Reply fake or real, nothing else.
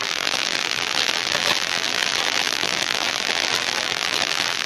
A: fake